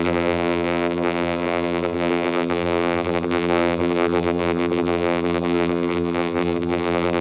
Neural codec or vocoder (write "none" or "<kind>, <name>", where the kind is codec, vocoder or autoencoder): vocoder, BigVGAN v2